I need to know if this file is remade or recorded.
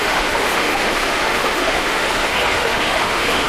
remade